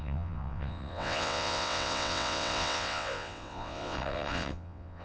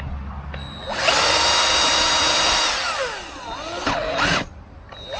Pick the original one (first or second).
second